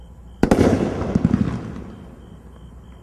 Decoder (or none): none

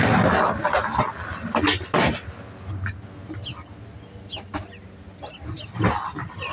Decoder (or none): none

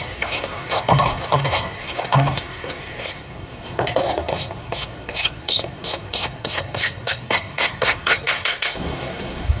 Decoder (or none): codec, SNAC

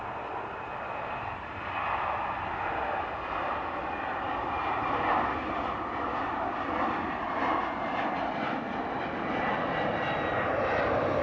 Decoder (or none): none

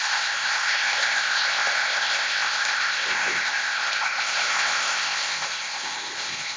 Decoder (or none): codec, ZipCodec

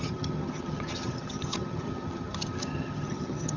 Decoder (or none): vocoder, HiFi-GAN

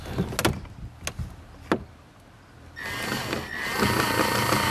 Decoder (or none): none